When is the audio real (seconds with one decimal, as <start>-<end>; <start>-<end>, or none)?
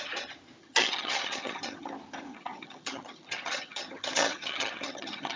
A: 0.0-0.6; 1.9-2.3